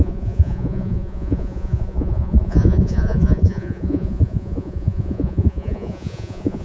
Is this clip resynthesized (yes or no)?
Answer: yes